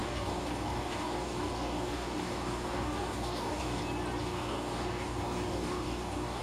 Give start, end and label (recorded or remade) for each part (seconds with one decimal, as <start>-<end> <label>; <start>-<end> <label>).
0.0-3.8 remade; 3.8-4.2 recorded; 4.2-6.4 remade